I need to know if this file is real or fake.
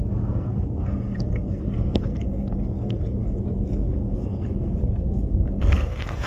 fake